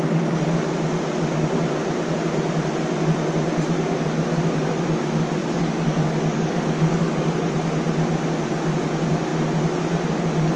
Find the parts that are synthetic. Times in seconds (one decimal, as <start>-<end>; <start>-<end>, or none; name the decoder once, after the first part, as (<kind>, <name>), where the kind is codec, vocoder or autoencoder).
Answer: 5.4-7.5 (codec, DAC)